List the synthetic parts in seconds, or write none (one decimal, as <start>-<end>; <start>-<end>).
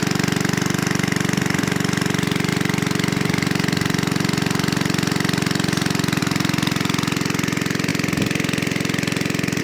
none